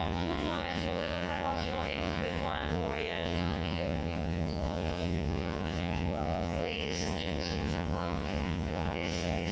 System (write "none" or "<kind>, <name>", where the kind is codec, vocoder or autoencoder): vocoder, Vocos